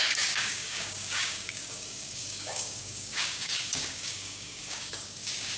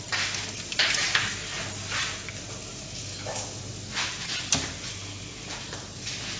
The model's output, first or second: first